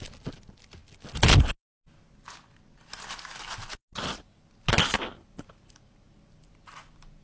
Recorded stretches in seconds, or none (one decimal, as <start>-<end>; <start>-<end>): 0.0-7.2